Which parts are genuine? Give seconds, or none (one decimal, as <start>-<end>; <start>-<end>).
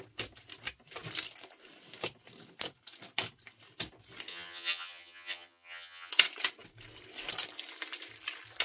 0.0-4.3; 6.1-8.6